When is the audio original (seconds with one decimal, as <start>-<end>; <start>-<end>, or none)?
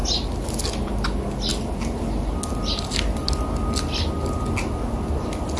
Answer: 0.0-5.6